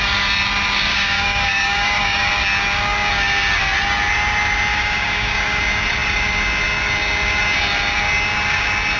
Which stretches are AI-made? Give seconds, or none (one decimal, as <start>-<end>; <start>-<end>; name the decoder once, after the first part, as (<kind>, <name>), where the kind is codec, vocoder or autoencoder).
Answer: 0.9-2.3 (codec, DAC); 4.7-5.6